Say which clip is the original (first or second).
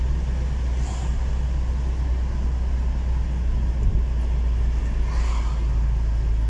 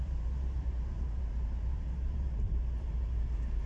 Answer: first